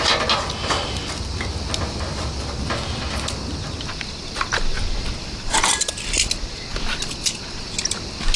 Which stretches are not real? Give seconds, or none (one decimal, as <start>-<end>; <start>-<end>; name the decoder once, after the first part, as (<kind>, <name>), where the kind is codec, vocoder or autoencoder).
none